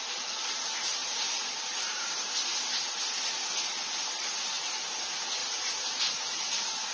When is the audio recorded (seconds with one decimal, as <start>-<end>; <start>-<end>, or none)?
0.0-6.9